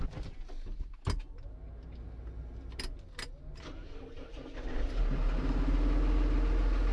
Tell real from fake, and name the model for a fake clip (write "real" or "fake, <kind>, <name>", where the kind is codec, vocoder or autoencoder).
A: real